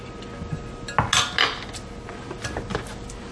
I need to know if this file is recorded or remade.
recorded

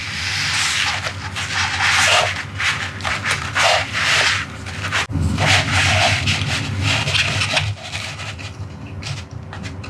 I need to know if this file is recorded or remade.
recorded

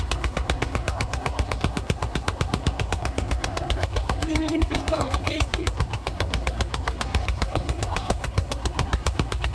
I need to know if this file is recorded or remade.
remade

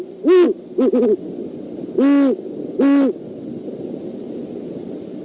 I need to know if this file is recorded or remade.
recorded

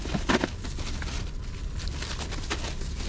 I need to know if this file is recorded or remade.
recorded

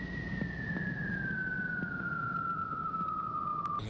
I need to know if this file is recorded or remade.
recorded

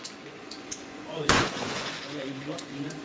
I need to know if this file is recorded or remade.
remade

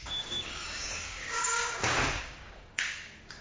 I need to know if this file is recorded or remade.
remade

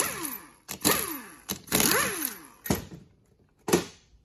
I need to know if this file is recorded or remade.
recorded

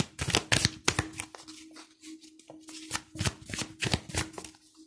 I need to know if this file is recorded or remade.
recorded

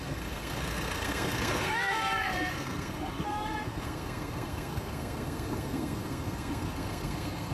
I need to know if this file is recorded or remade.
remade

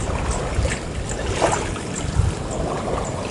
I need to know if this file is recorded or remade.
recorded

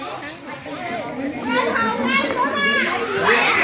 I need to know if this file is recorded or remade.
recorded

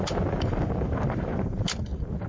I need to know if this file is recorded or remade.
remade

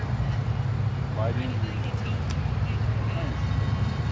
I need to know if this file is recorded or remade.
recorded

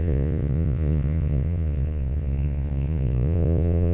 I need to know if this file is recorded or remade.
remade